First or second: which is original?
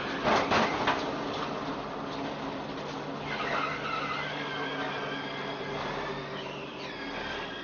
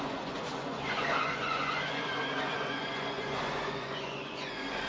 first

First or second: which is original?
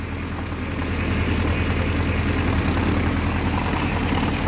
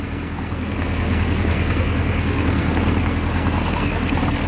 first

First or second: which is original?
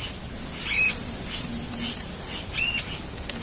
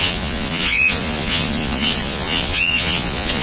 first